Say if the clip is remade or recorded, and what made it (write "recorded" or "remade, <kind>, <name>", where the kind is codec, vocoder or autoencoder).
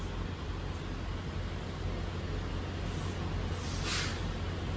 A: recorded